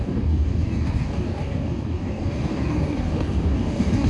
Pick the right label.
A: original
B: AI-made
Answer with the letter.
B